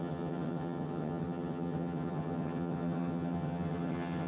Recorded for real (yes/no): no